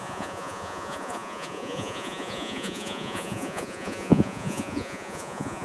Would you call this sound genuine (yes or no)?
no